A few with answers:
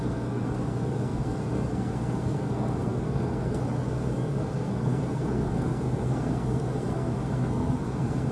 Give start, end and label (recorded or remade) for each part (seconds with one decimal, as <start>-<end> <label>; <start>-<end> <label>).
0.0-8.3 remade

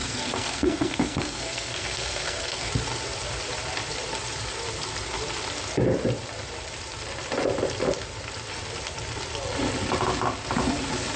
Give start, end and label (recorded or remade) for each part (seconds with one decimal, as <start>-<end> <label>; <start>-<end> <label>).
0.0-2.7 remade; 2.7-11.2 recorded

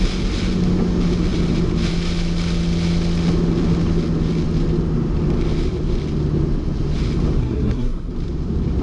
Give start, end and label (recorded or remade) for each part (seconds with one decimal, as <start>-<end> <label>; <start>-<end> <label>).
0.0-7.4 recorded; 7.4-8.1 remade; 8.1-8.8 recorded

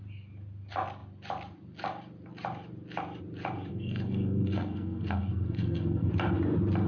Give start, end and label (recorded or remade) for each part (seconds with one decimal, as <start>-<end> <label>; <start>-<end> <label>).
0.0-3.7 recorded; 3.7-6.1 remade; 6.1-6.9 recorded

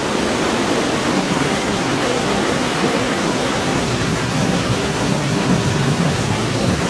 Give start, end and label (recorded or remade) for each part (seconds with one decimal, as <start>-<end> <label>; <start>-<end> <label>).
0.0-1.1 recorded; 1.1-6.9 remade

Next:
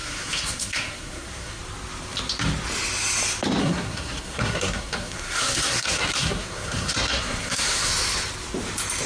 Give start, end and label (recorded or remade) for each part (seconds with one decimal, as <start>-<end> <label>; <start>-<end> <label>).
0.0-1.6 remade; 1.6-3.6 recorded; 3.6-7.9 remade; 7.9-9.1 recorded